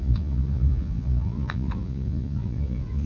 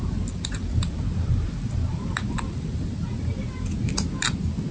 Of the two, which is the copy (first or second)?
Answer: first